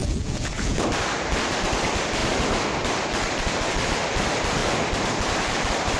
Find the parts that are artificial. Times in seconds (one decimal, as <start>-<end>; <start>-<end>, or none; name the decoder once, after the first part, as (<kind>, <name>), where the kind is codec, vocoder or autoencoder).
0.0-0.8 (vocoder, Vocos)